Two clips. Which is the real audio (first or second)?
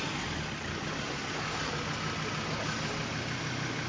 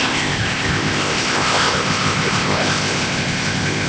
first